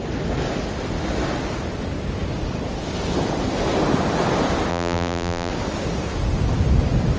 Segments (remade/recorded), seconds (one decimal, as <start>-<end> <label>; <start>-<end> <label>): 0.0-4.7 recorded; 4.7-5.5 remade; 5.5-7.2 recorded